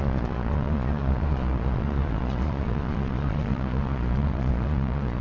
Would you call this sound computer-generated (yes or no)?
yes